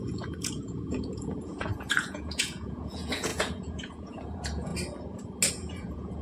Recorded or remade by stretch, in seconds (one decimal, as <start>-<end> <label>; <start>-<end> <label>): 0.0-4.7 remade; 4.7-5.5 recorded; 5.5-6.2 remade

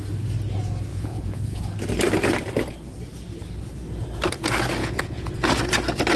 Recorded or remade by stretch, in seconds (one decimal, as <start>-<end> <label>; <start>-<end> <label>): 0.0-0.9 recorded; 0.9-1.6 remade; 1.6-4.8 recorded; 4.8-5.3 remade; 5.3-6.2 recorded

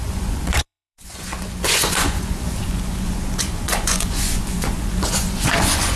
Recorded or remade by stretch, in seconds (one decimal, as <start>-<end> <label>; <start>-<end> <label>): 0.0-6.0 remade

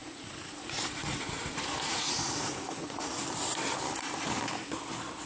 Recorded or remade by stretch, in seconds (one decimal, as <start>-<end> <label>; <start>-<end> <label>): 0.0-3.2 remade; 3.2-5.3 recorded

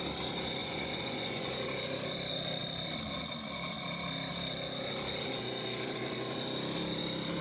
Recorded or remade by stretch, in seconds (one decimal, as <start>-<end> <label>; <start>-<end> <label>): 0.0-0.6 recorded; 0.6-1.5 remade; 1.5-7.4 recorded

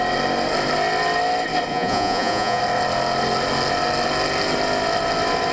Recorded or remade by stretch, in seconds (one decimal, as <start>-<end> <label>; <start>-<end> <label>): 0.0-1.7 recorded; 1.7-2.6 remade; 2.6-5.5 recorded

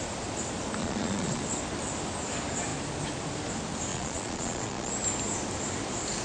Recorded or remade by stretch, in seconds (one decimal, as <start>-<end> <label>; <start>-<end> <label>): 0.0-0.8 recorded; 0.8-1.4 remade; 1.4-3.9 recorded; 3.9-4.9 remade; 4.9-6.2 recorded